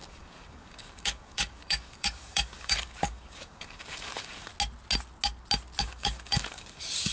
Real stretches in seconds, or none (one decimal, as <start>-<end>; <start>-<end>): 4.5-5.8